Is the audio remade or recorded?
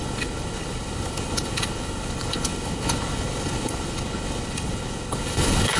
remade